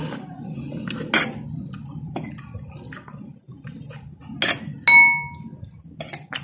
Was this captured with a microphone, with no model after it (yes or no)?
yes